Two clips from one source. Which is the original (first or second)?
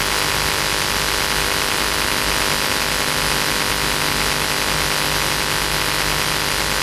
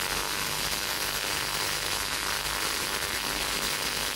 first